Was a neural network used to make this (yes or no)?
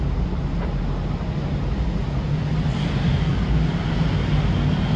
no